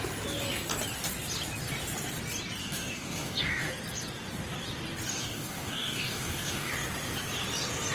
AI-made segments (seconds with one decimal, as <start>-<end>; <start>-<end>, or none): 2.6-3.7; 5.1-6.7